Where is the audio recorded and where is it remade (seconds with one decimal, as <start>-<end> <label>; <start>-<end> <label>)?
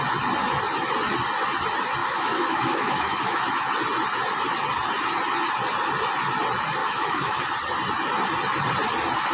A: 0.0-2.0 recorded; 2.0-3.4 remade; 3.4-6.8 recorded; 6.8-7.4 remade; 7.4-9.3 recorded